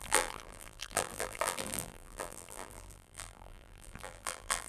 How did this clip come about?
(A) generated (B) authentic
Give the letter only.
A